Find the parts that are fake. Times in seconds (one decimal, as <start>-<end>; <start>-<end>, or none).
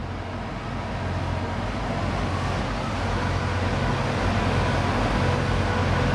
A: none